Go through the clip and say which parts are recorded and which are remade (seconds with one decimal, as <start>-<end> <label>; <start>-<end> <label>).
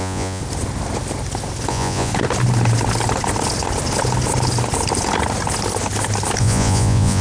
0.0-0.4 remade; 0.4-1.7 recorded; 1.7-2.1 remade; 2.1-6.4 recorded; 6.4-7.2 remade